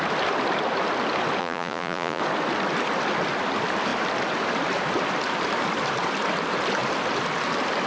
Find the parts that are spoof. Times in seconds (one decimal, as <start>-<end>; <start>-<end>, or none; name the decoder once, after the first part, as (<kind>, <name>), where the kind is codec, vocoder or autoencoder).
1.4-2.2 (vocoder, Vocos)